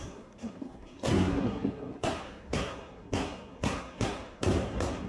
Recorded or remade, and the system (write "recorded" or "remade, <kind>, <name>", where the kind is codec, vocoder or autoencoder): remade, codec, SNAC